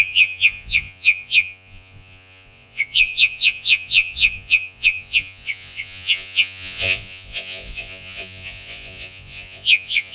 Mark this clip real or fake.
fake